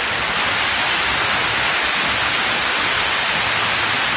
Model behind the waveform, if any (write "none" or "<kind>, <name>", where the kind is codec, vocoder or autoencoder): none